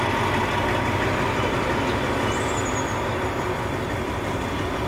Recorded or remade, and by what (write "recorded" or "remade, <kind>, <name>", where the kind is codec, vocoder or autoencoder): recorded